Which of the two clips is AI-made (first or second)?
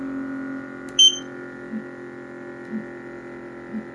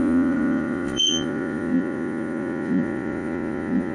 second